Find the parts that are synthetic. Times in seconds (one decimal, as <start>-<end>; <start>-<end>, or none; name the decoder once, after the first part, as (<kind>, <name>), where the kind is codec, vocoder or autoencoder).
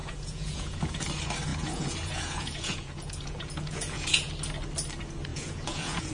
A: 0.0-1.0 (vocoder, Vocos); 1.5-4.3; 5.3-6.1